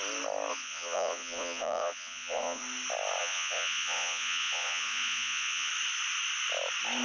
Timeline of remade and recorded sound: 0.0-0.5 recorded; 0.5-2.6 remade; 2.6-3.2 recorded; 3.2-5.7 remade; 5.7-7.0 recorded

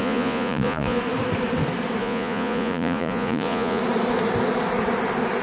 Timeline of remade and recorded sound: 0.0-1.0 remade; 1.0-2.0 recorded; 2.0-3.8 remade; 3.8-5.4 recorded

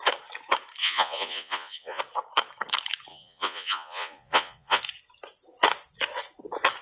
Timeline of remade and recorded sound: 0.0-0.8 recorded; 0.8-2.0 remade; 2.0-3.1 recorded; 3.1-4.8 remade; 4.8-6.8 recorded

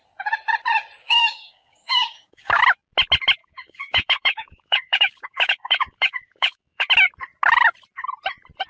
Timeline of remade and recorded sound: 0.0-1.0 recorded; 1.0-2.6 remade; 2.6-3.4 recorded; 3.4-6.9 remade; 6.9-8.7 recorded

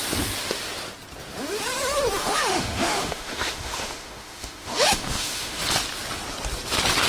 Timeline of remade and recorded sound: 0.0-2.2 recorded; 2.2-5.6 remade; 5.6-7.1 recorded

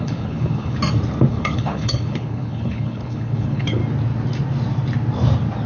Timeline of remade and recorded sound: 0.0-0.8 remade; 0.8-1.3 recorded; 1.3-3.8 remade; 3.8-5.7 recorded

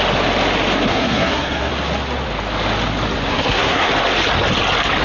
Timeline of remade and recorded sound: 0.0-0.9 recorded; 0.9-1.7 remade; 1.7-3.3 recorded; 3.3-3.9 remade; 3.9-5.0 recorded